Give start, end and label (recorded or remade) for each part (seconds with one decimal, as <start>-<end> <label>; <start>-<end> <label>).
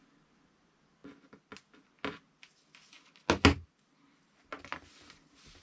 0.0-5.6 recorded